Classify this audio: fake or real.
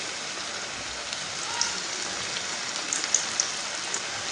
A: real